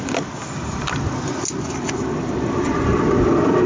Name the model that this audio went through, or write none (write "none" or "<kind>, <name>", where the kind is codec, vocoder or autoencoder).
none